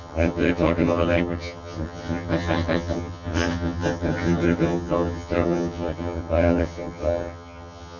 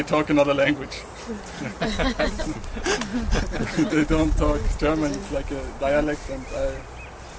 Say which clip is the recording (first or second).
second